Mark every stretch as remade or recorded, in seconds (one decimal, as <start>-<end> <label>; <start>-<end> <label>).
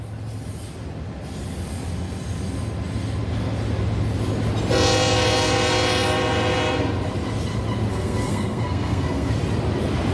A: 0.0-7.9 recorded; 7.9-9.3 remade; 9.3-10.1 recorded